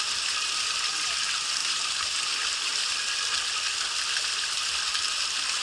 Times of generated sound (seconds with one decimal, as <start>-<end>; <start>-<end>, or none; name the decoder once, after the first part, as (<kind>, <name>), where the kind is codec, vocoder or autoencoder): 1.6-2.2 (vocoder, BigVGAN v2)